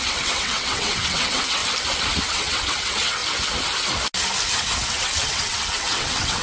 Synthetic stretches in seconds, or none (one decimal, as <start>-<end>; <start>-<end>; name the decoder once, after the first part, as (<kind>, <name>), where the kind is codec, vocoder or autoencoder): 0.0-1.6 (vocoder, WaveNeXt); 2.2-3.2; 4.9-6.4